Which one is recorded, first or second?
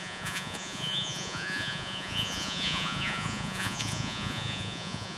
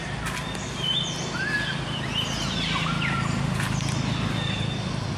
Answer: second